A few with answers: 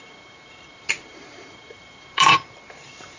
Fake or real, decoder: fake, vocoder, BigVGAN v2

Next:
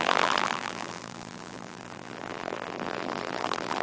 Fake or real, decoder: fake, vocoder, BigVGAN v2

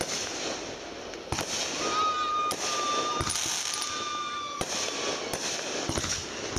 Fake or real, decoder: real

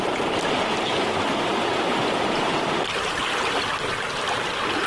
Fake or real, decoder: real